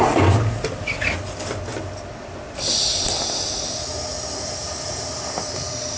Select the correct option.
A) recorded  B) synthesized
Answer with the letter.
A